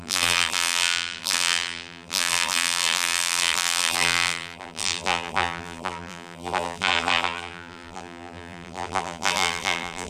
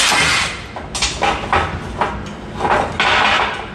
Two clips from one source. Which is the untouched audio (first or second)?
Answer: second